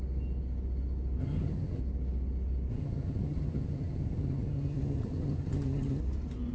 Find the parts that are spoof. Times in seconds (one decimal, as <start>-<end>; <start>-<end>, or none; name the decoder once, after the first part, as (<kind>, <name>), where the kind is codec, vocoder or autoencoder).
1.2-1.8 (vocoder, HiFi-GAN); 2.7-6.0